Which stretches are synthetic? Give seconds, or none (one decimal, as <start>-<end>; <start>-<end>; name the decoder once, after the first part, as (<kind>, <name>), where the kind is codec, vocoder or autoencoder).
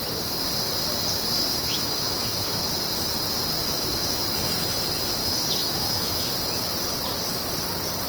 1.5-2.6 (autoencoder, DAC-VAE); 3.6-4.2; 5.2-6.3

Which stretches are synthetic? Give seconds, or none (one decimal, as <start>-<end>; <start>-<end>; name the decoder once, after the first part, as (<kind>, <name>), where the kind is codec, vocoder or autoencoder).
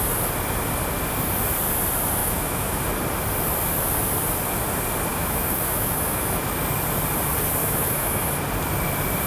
2.2-2.8 (autoencoder, DAC-VAE); 5.1-6.5; 7.6-8.3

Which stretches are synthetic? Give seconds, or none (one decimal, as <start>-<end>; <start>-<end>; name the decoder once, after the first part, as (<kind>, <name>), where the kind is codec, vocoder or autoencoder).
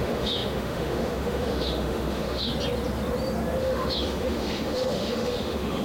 0.0-2.5 (autoencoder, DAC-VAE); 3.6-5.8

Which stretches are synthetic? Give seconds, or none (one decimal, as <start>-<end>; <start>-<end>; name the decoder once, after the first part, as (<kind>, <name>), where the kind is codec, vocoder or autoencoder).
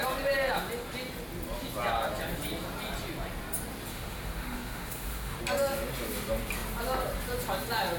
3.9-5.4 (autoencoder, DAC-VAE)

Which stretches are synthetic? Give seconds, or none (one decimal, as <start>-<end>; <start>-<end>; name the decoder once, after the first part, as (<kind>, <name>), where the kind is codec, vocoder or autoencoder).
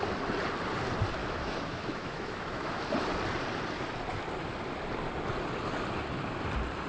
1.2-2.8 (autoencoder, DAC-VAE)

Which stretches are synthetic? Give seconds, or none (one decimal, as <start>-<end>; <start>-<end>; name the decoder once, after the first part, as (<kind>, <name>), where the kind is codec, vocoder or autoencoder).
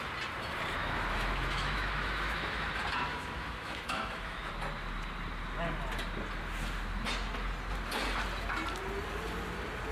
0.8-2.7 (autoencoder, DAC-VAE); 3.1-4.5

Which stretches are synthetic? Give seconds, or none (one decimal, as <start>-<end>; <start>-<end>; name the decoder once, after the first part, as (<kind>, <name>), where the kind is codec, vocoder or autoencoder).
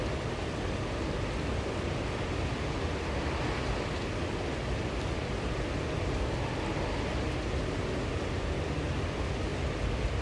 none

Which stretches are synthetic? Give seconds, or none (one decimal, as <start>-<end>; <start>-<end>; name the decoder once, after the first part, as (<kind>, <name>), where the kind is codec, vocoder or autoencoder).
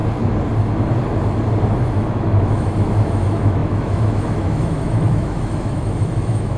1.9-6.6 (autoencoder, DAC-VAE)